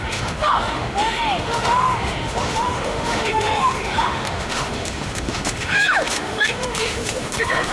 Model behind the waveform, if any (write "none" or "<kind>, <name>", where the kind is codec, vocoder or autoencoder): autoencoder, DAC-VAE